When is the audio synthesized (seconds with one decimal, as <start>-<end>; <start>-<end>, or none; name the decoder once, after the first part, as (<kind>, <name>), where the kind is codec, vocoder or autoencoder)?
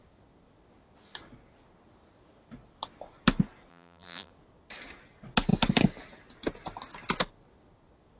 3.7-4.3 (vocoder, BigVGAN v2)